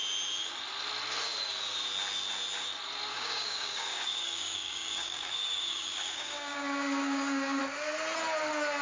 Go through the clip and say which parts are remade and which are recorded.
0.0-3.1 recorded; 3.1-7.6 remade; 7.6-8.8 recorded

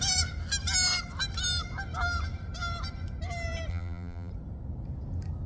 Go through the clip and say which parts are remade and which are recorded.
0.0-3.7 recorded; 3.7-4.3 remade; 4.3-5.5 recorded

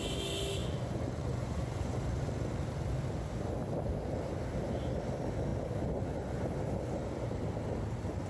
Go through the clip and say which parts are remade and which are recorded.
0.0-0.6 recorded; 0.6-2.0 remade; 2.0-8.3 recorded

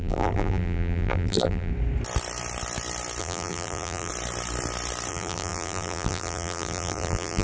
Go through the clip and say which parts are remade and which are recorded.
0.0-1.7 remade; 1.7-3.2 recorded; 3.2-4.1 remade; 4.1-5.1 recorded; 5.1-7.4 remade

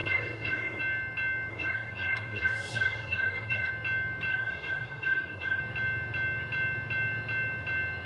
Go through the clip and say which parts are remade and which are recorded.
0.0-0.8 remade; 0.8-1.5 recorded; 1.5-3.7 remade; 3.7-4.3 recorded; 4.3-5.6 remade; 5.6-8.1 recorded

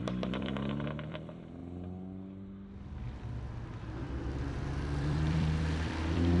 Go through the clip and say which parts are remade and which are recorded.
0.0-1.6 remade; 1.6-5.0 recorded; 5.0-6.4 remade